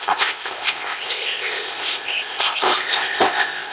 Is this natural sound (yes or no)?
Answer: no